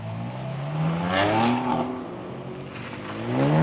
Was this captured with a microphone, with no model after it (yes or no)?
yes